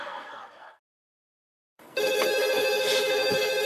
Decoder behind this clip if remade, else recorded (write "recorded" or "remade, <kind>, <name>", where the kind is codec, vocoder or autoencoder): remade, codec, SNAC